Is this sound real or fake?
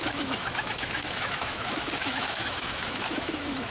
fake